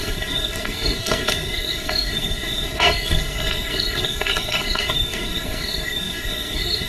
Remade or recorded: remade